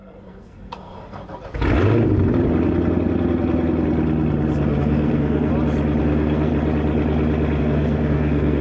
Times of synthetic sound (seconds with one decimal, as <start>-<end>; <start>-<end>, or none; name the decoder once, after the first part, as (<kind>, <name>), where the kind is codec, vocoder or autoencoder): 0.0-1.2 (codec, SNAC); 4.8-5.5; 6.0-6.5; 7.6-8.6